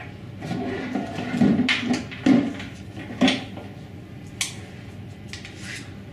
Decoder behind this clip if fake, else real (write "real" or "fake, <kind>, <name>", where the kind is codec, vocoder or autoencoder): real